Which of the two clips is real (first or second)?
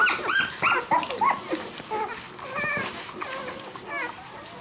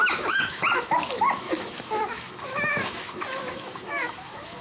first